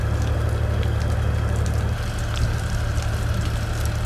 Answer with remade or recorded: recorded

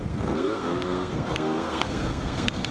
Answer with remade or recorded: remade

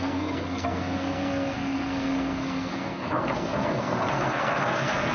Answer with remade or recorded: remade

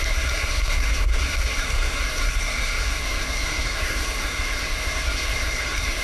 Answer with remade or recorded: remade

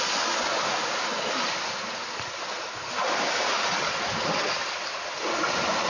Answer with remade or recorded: recorded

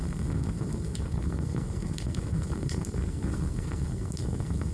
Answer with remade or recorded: remade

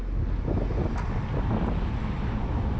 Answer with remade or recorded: recorded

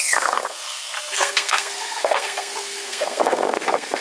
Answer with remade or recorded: remade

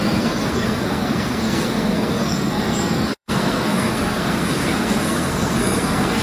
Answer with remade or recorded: remade